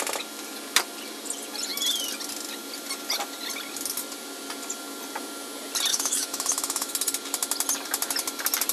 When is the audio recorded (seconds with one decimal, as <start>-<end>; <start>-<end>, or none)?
0.0-5.9; 6.9-8.7